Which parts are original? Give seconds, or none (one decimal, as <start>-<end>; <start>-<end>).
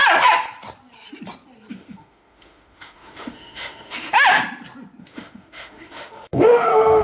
0.0-1.7; 4.4-5.0